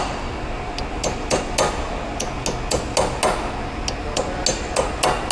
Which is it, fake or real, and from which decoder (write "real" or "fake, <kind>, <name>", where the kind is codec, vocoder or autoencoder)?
real